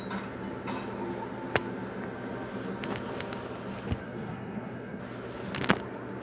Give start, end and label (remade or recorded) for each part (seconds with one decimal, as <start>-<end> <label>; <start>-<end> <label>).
0.0-4.0 recorded; 4.0-5.0 remade; 5.0-6.2 recorded